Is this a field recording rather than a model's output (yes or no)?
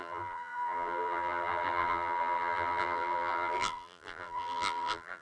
no